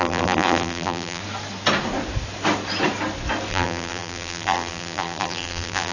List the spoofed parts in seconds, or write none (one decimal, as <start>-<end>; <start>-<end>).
0.0-1.2; 3.5-5.9

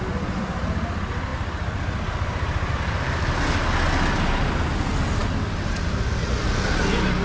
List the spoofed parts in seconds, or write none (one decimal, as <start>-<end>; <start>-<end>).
none

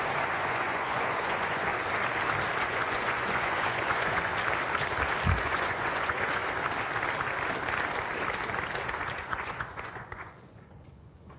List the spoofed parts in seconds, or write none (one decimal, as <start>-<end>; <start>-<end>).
0.0-1.7; 2.6-4.3; 5.4-6.4; 9.2-11.4

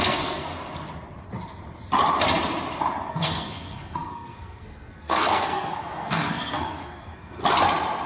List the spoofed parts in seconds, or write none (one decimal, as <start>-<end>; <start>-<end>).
0.0-0.5; 3.1-7.4

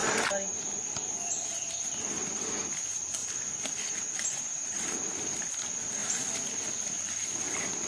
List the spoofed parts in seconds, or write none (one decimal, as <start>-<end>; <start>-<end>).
none

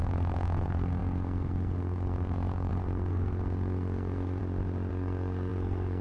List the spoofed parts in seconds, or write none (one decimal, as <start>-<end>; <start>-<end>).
0.0-4.4; 4.9-6.0